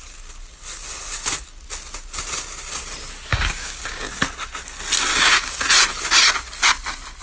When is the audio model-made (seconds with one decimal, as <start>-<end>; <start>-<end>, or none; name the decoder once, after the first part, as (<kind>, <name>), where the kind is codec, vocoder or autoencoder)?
3.3-4.1 (codec, DAC); 5.1-5.7